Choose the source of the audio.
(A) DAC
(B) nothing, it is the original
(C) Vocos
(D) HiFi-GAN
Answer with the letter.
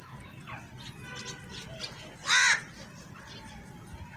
B